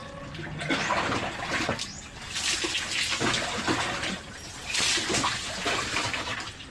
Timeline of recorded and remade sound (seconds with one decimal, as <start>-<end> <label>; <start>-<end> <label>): 0.0-6.7 recorded